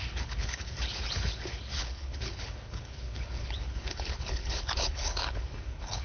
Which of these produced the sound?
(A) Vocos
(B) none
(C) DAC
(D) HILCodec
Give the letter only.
D